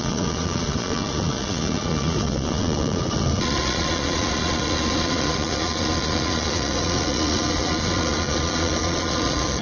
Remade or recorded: remade